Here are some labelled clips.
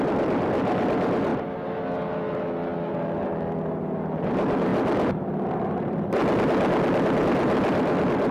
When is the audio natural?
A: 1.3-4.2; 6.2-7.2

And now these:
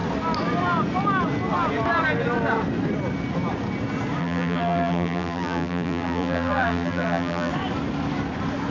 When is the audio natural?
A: 0.0-4.2; 7.5-8.7